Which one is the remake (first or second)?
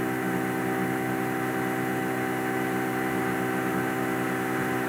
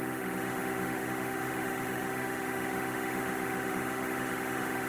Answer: second